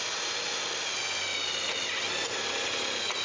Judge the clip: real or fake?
real